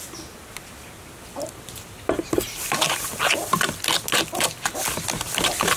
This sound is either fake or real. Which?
real